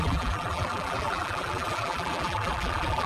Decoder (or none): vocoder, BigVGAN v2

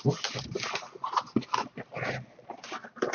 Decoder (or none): none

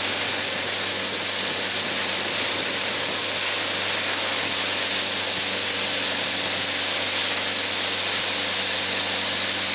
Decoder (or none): none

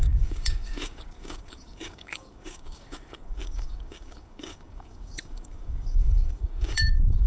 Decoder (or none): codec, DAC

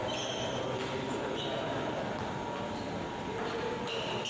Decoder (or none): none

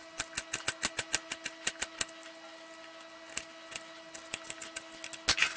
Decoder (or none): none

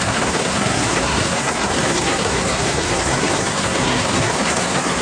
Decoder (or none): codec, SNAC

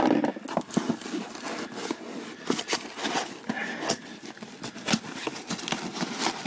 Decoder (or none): none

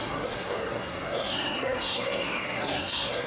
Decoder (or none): codec, SNAC